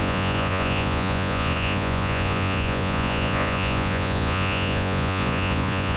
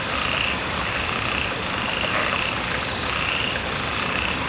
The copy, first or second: first